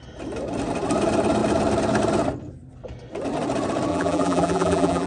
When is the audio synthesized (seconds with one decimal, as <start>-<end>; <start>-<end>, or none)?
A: 3.9-5.1